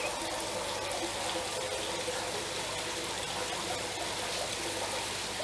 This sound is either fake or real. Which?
real